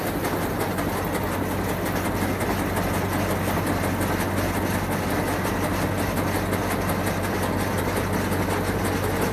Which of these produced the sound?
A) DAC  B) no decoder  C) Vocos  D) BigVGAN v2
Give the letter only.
B